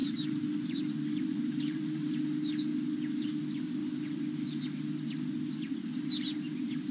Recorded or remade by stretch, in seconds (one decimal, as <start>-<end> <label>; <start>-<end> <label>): 0.0-2.1 remade; 2.1-6.9 recorded